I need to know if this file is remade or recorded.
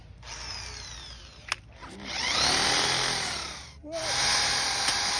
recorded